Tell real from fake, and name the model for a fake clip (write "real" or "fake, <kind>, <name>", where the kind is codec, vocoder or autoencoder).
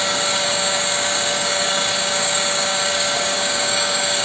fake, codec, DAC